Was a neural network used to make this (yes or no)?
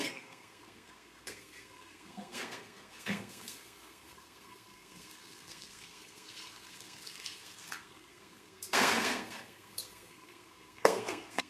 yes